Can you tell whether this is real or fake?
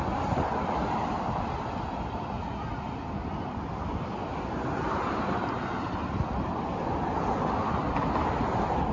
real